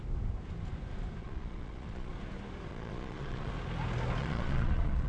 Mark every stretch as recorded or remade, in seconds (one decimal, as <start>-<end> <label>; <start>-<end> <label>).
0.0-1.2 recorded; 1.2-2.1 remade; 2.1-2.7 recorded; 2.7-3.5 remade; 3.5-4.2 recorded; 4.2-5.1 remade